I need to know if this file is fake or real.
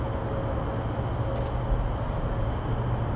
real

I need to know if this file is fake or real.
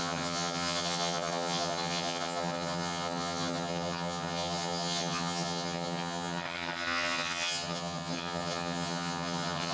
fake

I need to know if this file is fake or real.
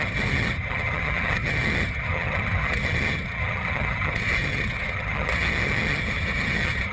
fake